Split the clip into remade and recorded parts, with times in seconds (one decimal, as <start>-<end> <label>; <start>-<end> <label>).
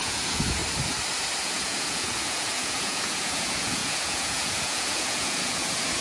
0.0-0.6 remade; 0.6-1.4 recorded; 1.4-6.0 remade